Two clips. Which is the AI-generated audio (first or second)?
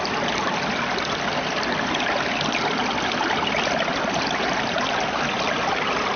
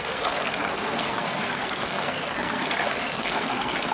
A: second